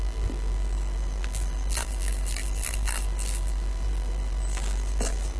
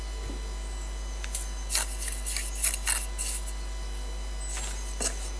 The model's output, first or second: first